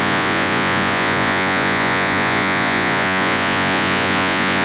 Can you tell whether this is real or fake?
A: fake